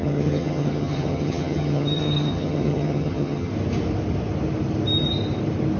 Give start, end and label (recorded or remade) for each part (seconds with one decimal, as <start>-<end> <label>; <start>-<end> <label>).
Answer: 0.0-3.5 remade; 3.5-5.8 recorded